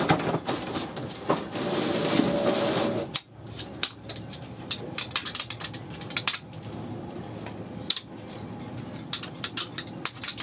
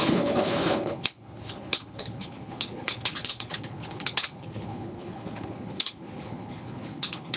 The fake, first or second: second